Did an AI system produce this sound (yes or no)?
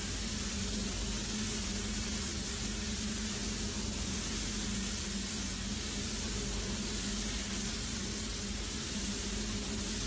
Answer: no